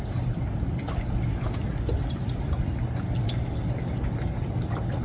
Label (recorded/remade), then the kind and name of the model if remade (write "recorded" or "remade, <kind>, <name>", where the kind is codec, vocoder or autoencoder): recorded